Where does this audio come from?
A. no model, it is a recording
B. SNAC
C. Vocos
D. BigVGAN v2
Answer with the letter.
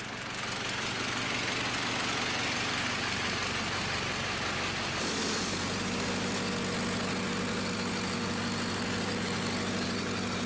A